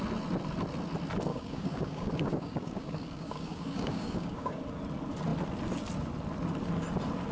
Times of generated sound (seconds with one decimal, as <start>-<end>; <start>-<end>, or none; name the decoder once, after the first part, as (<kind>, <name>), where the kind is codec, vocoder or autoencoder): 1.3-4.6 (codec, DAC)

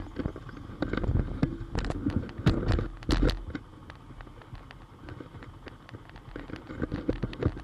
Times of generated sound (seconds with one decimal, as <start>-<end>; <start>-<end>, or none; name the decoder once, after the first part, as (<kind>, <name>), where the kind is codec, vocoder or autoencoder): none

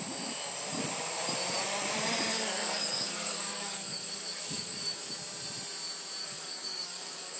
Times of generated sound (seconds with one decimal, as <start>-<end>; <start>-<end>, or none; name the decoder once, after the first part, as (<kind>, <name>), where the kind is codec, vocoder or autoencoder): 2.3-5.0 (codec, DAC); 6.2-7.4

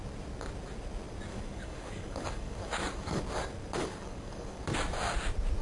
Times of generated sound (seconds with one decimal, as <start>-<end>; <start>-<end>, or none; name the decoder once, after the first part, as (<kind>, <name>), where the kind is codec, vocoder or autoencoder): 1.3-3.2 (codec, DAC); 3.8-4.6

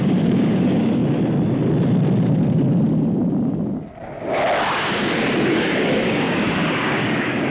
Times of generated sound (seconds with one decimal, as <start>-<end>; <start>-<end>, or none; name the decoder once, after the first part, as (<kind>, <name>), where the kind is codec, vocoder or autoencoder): 0.0-1.0 (codec, DAC); 5.4-7.5

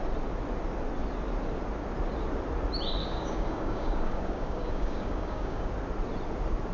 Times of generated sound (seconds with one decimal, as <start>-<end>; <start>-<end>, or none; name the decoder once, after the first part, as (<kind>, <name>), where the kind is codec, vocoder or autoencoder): 3.0-5.7 (codec, DAC)

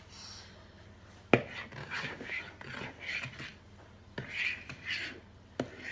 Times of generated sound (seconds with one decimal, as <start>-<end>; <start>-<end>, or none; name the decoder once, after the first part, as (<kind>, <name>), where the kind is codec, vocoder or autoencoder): 1.8-2.4 (codec, DAC)

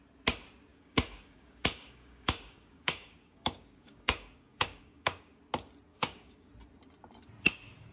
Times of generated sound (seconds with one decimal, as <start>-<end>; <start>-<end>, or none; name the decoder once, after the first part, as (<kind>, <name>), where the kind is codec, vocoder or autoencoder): 0.7-5.4 (codec, DAC); 5.9-6.5